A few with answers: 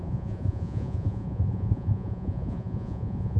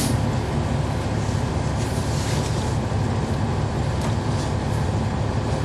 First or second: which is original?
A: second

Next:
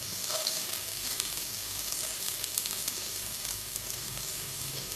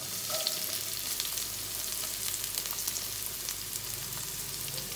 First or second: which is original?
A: second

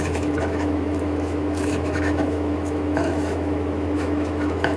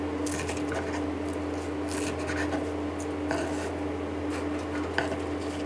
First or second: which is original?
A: second